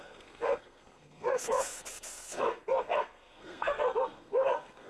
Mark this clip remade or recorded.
remade